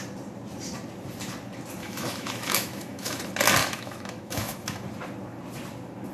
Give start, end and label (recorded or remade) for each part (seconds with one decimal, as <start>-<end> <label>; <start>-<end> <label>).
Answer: 0.0-1.8 recorded; 1.8-3.2 remade; 3.2-3.6 recorded; 3.6-4.8 remade; 4.8-6.1 recorded